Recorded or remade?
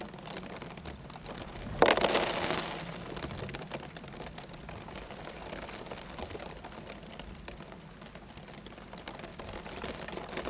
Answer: recorded